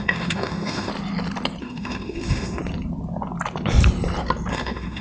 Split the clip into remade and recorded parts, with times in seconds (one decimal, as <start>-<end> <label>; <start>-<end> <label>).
0.0-0.9 remade; 0.9-1.6 recorded; 1.6-2.6 remade; 2.6-4.5 recorded; 4.5-5.0 remade